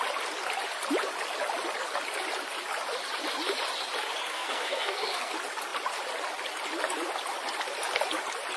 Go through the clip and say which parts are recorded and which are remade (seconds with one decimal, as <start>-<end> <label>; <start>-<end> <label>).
0.0-4.3 recorded; 4.3-5.3 remade; 5.3-8.6 recorded